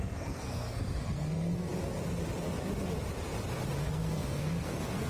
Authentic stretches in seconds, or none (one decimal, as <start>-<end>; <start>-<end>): 1.7-3.8